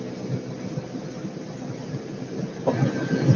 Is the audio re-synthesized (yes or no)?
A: no